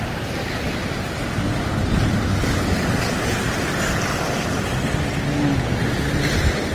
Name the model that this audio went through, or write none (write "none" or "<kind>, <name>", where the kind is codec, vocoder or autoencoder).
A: none